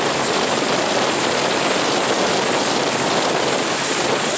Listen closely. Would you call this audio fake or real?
real